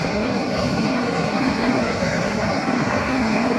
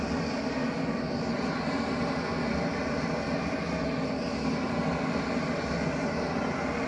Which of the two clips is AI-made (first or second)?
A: first